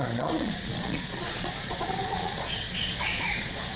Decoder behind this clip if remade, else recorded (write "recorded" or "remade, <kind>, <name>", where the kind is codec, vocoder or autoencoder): remade, vocoder, Vocos